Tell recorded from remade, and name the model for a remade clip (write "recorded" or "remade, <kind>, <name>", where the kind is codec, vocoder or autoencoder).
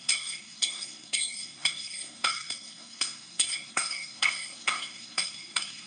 remade, codec, SNAC